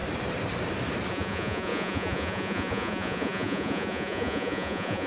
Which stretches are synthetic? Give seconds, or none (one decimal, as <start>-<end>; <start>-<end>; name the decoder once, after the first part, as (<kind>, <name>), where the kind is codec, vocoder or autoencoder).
1.1-5.1 (vocoder, Vocos)